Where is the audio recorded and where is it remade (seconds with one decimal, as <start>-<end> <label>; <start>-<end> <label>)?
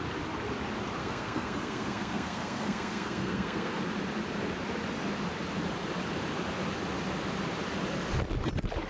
0.0-1.0 recorded; 1.0-3.8 remade; 3.8-8.9 recorded